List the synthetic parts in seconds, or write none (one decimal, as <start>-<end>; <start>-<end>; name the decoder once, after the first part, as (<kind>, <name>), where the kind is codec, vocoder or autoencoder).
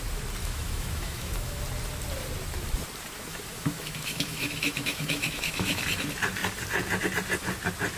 0.4-1.6 (autoencoder, DAC-VAE); 3.3-5.8